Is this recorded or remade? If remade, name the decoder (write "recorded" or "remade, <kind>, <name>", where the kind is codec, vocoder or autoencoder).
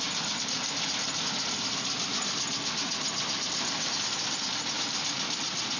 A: recorded